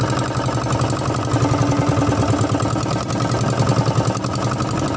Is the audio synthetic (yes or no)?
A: no